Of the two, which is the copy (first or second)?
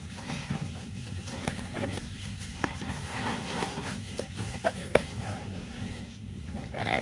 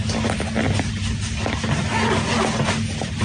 first